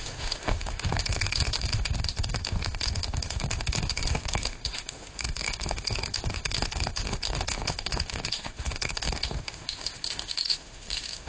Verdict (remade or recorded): remade